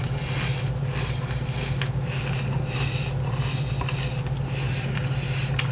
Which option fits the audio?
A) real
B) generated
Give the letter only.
A